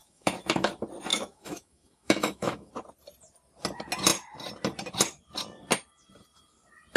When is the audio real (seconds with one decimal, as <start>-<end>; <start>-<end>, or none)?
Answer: 0.7-1.1; 2.7-7.0